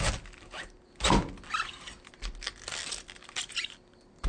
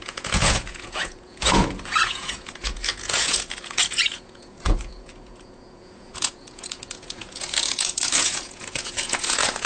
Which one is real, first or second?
first